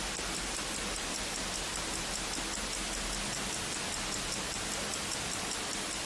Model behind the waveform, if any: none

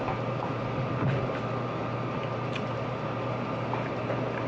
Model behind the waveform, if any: none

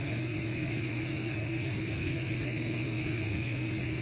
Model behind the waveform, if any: codec, SNAC